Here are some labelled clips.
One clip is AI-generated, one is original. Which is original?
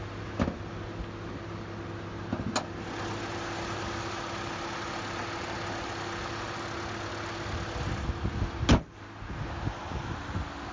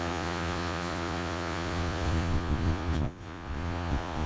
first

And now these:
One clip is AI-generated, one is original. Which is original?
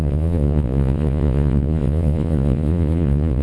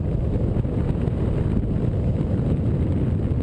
second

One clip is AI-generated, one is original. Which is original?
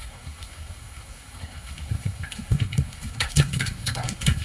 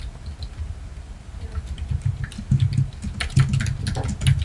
second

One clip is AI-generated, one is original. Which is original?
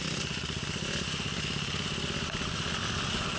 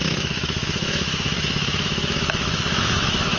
first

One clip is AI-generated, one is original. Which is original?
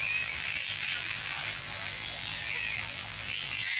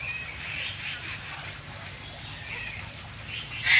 second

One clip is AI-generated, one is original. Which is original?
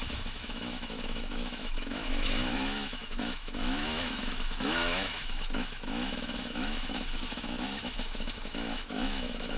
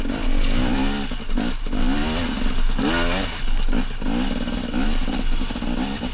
second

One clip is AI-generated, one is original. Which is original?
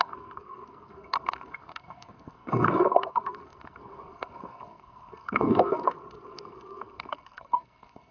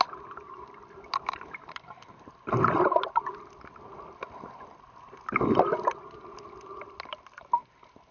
second